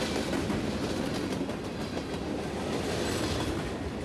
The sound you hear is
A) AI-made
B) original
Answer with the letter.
B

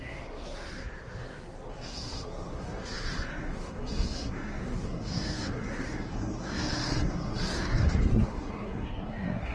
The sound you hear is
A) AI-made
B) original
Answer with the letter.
A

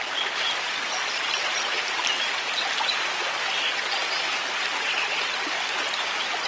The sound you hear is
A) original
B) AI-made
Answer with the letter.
A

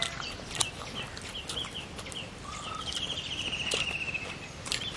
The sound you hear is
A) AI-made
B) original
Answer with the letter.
B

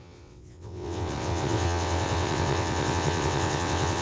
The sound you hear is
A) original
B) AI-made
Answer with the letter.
B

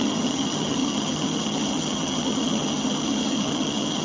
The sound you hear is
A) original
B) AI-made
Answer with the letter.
B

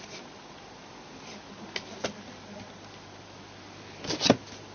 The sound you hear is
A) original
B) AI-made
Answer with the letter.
A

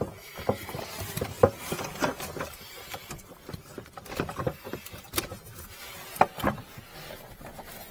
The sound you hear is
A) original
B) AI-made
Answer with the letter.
A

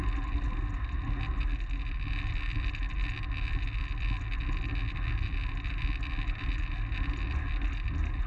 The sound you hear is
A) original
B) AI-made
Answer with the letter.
A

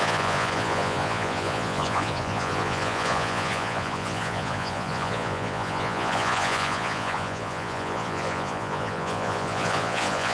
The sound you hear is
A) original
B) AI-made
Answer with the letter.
B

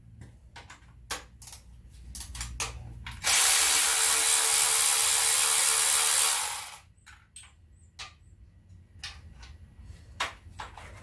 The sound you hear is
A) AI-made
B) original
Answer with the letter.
B